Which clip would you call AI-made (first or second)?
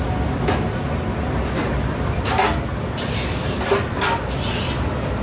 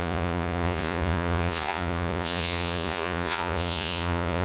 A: second